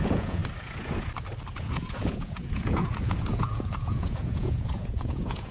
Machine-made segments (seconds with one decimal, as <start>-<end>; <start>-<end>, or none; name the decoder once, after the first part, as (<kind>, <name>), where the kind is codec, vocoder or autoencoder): 0.0-0.4 (vocoder, Vocos); 1.5-5.5